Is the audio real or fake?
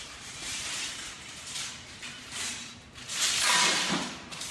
fake